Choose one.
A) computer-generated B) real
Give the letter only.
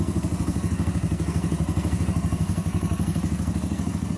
A